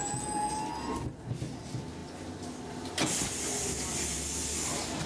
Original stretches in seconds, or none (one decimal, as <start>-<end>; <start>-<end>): 0.5-5.1